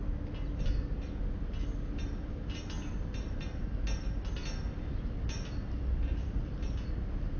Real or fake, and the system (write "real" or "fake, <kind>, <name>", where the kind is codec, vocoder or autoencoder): real